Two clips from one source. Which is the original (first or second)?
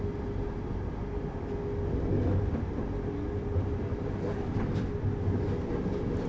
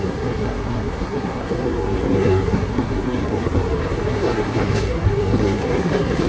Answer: first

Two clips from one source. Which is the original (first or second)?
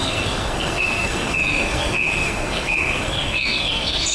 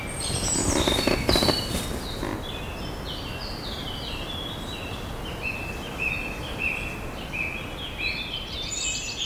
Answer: second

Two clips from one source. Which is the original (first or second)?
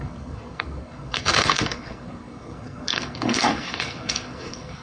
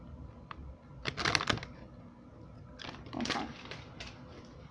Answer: second